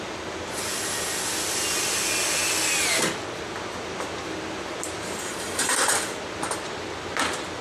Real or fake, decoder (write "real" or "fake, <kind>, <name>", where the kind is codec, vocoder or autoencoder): real